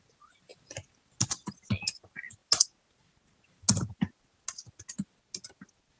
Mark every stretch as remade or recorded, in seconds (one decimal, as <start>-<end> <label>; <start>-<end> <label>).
0.0-6.0 recorded